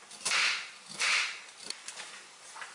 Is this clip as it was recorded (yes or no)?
no